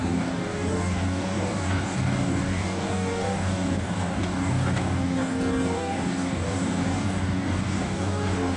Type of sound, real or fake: fake